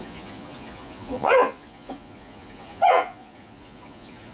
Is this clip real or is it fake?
fake